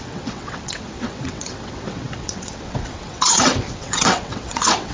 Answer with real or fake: fake